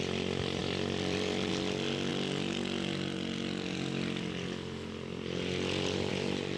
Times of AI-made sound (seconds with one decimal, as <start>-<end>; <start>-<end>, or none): 0.6-1.5